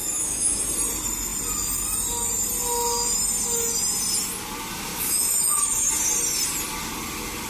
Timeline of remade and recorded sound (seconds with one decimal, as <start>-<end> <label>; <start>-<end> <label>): 0.0-0.6 remade; 0.6-4.9 recorded; 4.9-5.9 remade; 5.9-7.5 recorded